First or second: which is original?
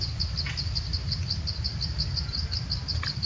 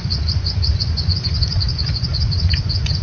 first